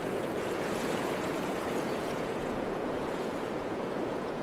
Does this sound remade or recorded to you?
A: remade